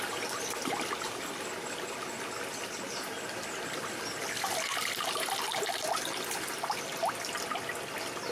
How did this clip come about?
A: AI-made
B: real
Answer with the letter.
B